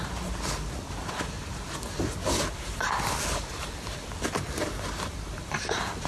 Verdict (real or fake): real